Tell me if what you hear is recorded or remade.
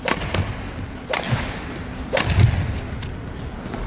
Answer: recorded